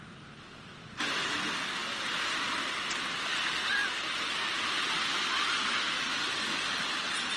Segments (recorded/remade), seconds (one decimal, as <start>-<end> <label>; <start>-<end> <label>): 0.0-7.4 recorded